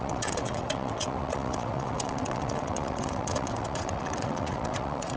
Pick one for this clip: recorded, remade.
remade